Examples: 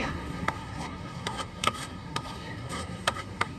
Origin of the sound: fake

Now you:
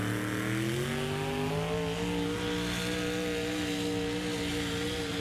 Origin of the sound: real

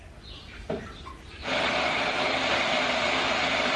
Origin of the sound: real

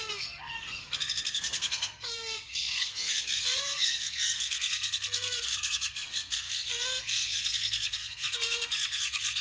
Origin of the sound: fake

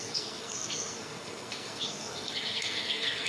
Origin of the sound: fake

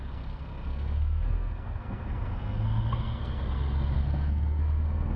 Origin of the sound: fake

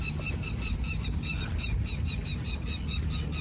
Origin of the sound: real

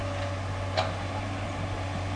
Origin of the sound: real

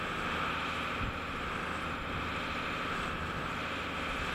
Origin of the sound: real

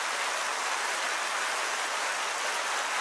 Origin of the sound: real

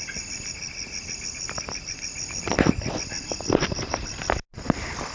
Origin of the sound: real